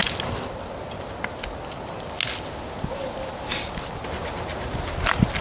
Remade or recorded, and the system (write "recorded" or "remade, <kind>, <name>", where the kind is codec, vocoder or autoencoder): recorded